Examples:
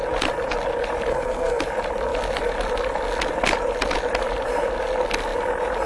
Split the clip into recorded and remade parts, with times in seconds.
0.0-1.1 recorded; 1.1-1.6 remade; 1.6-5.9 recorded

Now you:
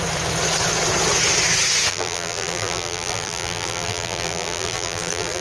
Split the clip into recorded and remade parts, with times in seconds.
0.0-1.9 recorded; 1.9-5.4 remade

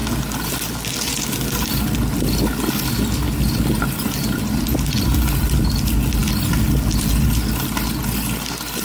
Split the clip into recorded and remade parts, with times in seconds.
0.0-8.8 recorded

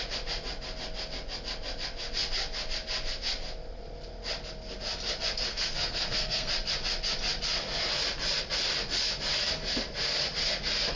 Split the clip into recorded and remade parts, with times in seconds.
0.0-5.5 recorded; 5.5-6.5 remade; 6.5-11.0 recorded

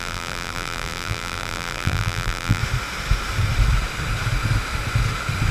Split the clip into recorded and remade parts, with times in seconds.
0.0-2.6 remade; 2.6-5.5 recorded

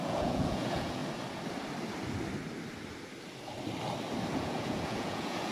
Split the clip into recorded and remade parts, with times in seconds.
0.0-1.0 remade; 1.0-4.3 recorded; 4.3-5.5 remade

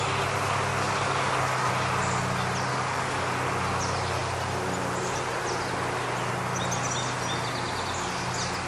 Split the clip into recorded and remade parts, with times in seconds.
0.0-0.7 recorded; 0.7-1.7 remade; 1.7-2.7 recorded; 2.7-3.3 remade; 3.3-8.7 recorded

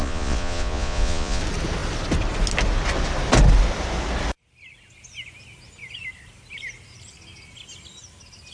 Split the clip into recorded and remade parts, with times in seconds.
0.0-1.4 remade; 1.4-8.5 recorded